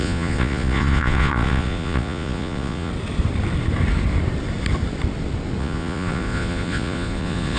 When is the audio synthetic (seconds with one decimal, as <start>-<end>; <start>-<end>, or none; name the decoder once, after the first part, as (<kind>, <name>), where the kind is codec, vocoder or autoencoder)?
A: 0.0-2.9 (vocoder, Vocos); 5.6-7.6